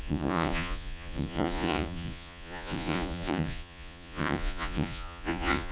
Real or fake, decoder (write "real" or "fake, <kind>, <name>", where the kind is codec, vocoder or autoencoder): fake, vocoder, Vocos